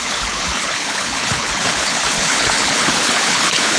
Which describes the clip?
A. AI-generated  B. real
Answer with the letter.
A